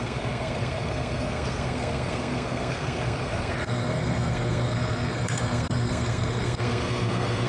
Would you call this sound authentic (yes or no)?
no